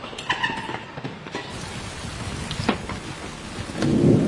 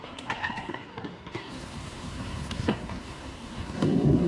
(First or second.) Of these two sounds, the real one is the first